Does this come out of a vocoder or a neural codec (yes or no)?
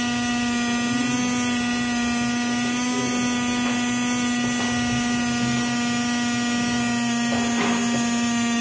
no